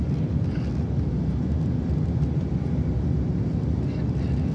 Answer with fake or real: real